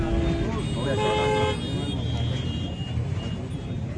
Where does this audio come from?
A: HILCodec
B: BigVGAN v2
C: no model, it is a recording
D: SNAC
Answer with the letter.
C